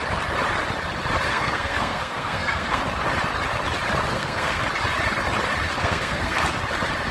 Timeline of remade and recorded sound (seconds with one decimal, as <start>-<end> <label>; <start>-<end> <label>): 0.0-1.3 recorded; 1.3-2.8 remade; 2.8-4.1 recorded; 4.1-4.6 remade; 4.6-5.8 recorded; 5.8-6.6 remade; 6.6-7.1 recorded